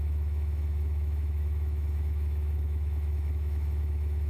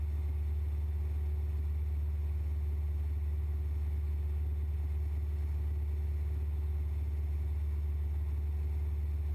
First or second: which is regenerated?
first